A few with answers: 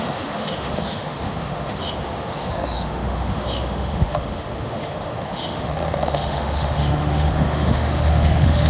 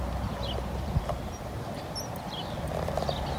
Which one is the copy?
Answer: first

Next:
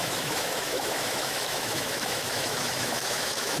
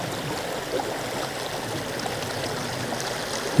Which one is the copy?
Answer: first